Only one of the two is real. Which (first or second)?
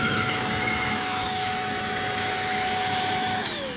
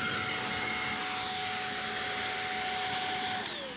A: second